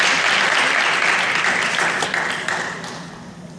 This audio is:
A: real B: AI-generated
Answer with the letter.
A